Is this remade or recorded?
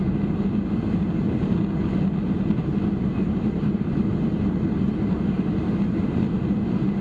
recorded